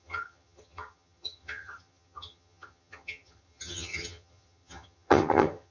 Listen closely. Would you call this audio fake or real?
fake